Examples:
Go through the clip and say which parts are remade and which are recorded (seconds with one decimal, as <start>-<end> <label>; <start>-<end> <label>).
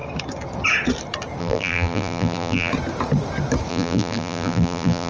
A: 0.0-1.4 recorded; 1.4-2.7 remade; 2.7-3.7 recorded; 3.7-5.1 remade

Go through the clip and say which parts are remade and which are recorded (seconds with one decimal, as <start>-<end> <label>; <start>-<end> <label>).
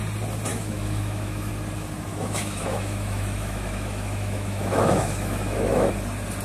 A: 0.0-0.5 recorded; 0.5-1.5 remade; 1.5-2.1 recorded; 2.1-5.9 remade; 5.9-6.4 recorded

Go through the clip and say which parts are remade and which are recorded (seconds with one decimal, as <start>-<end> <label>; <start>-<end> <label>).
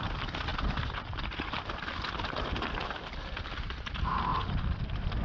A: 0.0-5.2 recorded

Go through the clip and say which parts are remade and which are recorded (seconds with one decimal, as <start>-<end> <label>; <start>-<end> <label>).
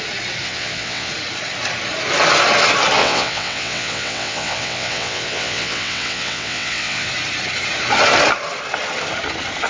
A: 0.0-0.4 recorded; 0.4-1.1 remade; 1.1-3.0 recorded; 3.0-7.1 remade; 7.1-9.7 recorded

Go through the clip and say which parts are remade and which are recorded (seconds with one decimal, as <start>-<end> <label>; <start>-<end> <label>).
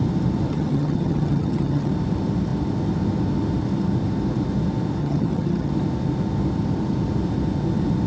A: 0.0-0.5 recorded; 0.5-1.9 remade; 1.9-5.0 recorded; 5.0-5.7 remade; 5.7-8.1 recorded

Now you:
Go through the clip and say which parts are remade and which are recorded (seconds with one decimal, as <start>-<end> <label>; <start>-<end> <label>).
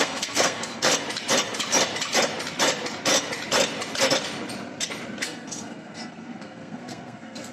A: 0.0-0.9 remade; 0.9-5.2 recorded; 5.2-7.5 remade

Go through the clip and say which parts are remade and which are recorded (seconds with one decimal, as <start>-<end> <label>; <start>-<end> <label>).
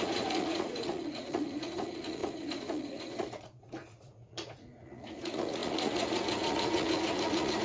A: 0.0-7.6 remade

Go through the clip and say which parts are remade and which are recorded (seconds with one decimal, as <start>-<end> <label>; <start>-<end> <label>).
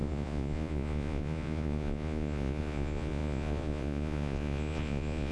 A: 0.0-5.3 remade